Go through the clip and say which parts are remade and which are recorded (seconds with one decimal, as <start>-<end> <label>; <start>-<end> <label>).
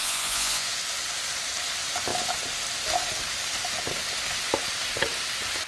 0.0-0.7 remade; 0.7-5.7 recorded